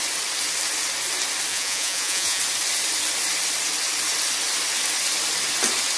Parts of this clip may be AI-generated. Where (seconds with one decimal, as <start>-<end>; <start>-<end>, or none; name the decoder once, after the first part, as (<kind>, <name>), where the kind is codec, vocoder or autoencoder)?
1.5-2.4 (vocoder, Vocos)